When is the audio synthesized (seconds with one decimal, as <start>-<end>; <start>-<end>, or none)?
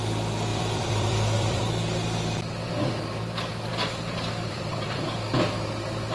0.5-1.6; 3.7-6.1